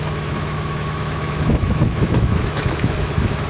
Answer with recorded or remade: remade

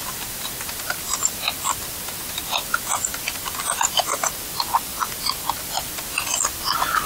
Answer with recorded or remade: recorded